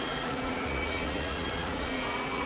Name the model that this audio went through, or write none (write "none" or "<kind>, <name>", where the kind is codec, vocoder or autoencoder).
vocoder, Vocos